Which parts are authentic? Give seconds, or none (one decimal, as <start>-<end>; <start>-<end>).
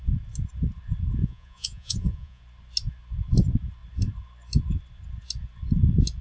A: 0.0-1.2; 2.4-6.2